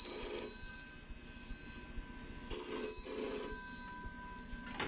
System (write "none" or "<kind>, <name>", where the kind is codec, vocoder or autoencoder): none